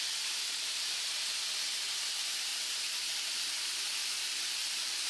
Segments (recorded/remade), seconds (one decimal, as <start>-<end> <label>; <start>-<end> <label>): 0.0-2.5 recorded; 2.5-3.0 remade; 3.0-4.0 recorded; 4.0-5.1 remade